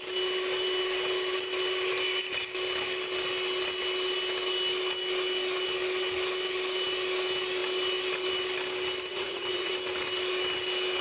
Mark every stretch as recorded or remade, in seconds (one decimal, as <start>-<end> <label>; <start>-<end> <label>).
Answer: 0.0-9.1 recorded; 9.1-9.7 remade; 9.7-11.0 recorded